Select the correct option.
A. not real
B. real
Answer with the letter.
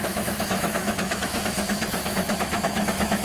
A